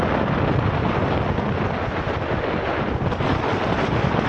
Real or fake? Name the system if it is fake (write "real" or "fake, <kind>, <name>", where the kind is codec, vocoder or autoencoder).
real